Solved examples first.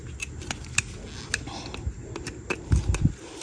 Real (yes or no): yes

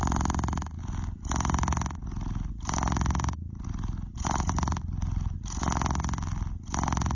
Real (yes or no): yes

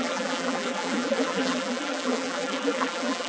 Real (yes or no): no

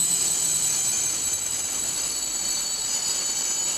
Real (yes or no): yes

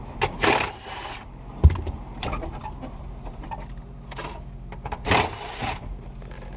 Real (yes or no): no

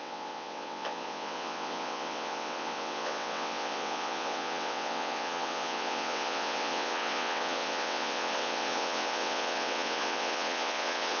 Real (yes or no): no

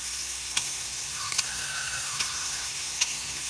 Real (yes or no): no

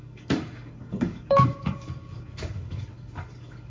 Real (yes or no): no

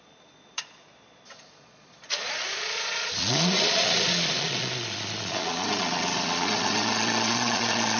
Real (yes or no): no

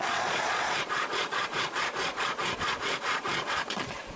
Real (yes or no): no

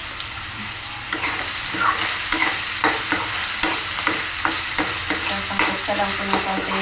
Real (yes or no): yes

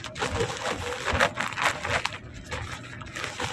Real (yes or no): yes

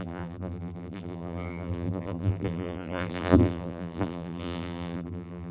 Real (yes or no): no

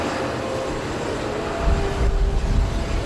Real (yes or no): yes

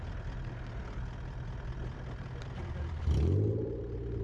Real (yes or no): yes